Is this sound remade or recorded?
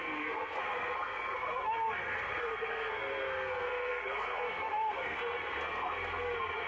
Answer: remade